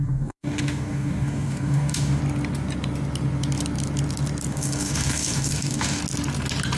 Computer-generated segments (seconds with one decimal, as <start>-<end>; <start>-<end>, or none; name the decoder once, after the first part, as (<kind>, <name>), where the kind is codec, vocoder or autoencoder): 0.0-2.2 (codec, DAC); 4.5-6.0